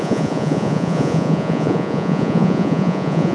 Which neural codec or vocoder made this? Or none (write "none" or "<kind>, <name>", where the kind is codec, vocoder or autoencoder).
vocoder, Vocos